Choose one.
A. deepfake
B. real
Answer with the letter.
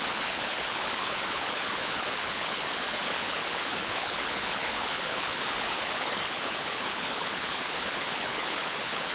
A